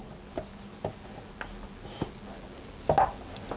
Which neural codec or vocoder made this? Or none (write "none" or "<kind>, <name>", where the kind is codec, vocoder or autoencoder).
none